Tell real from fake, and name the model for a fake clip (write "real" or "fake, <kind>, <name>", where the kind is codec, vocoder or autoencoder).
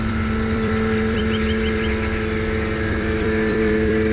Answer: fake, vocoder, BigVGAN v2